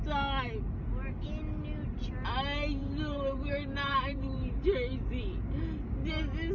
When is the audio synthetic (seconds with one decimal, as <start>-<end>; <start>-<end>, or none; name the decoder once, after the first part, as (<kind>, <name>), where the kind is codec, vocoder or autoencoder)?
2.8-5.1 (vocoder, BigVGAN v2)